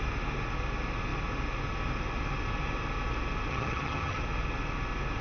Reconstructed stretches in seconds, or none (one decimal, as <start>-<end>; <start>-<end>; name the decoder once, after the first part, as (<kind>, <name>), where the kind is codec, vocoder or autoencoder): 3.5-4.2 (vocoder, HiFi-GAN)